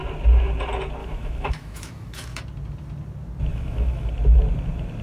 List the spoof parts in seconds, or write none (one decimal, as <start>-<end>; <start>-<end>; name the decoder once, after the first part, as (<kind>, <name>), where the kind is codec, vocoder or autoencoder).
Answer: 1.0-2.4 (autoencoder, DAC-VAE); 3.5-4.1